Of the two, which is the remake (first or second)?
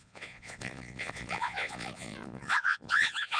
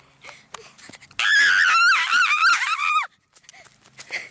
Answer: first